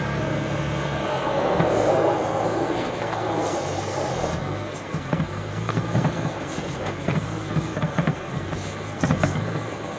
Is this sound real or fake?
fake